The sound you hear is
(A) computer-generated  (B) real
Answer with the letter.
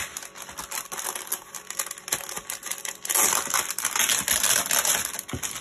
B